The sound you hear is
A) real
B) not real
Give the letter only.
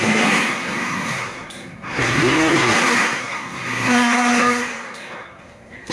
B